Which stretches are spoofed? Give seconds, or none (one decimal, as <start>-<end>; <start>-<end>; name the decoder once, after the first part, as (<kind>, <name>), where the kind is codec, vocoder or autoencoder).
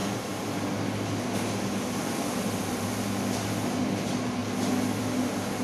none